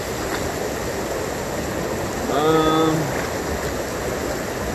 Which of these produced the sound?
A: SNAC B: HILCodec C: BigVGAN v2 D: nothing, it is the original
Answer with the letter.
D